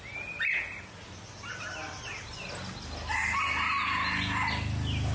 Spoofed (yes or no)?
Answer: no